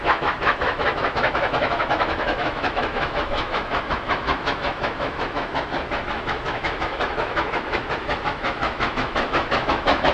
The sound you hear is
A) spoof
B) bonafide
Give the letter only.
A